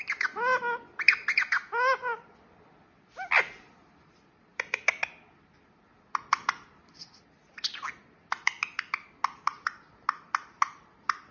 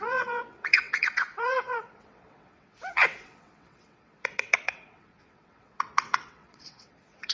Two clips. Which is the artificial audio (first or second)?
second